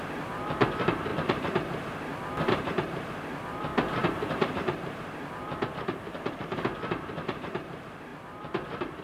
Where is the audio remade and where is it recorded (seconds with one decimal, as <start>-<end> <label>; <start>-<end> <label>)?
0.0-1.1 remade; 1.1-2.4 recorded; 2.4-9.0 remade